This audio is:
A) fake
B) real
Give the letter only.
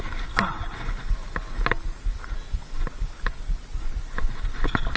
B